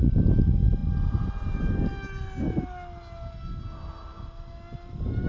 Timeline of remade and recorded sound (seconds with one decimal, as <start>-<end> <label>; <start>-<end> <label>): 0.0-5.3 recorded